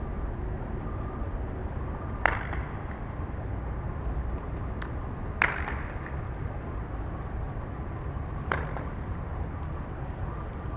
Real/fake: real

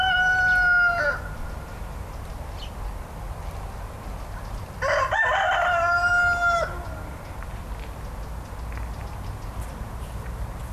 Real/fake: real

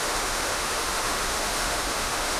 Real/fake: fake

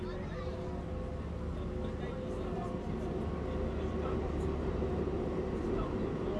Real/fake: real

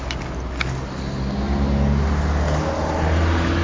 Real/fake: real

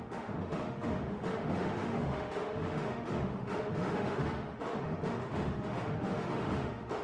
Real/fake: fake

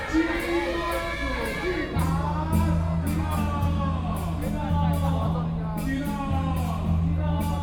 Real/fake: real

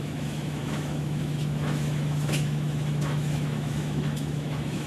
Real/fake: fake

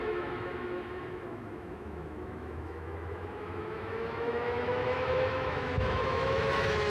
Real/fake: fake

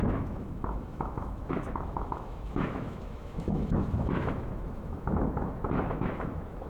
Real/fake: fake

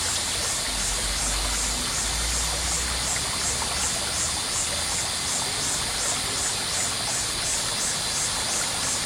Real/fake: real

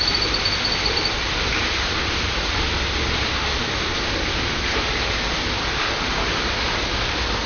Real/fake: real